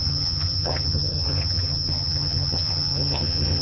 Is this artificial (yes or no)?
yes